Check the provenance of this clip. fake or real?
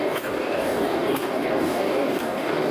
fake